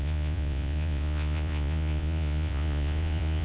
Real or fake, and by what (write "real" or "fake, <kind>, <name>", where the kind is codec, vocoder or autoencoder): fake, vocoder, Vocos